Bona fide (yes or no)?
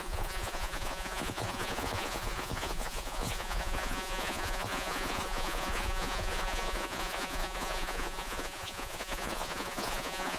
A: no